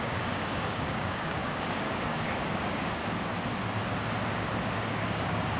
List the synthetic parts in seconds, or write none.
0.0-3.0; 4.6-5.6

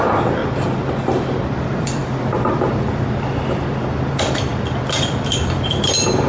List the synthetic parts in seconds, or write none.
0.0-0.4; 1.5-6.3

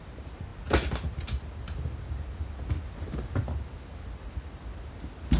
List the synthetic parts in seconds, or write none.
none

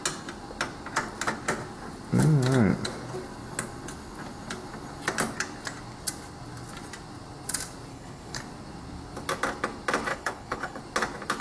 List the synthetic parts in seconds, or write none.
7.9-8.4; 10.1-10.8

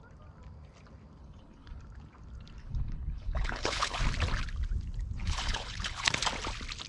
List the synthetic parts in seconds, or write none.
1.2-1.8; 2.6-4.0; 5.2-6.1

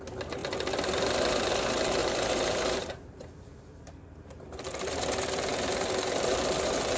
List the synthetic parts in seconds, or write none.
2.0-4.6

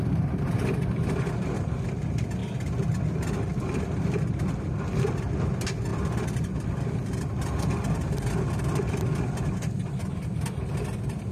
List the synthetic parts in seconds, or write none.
none

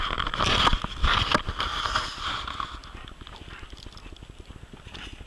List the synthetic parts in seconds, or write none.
none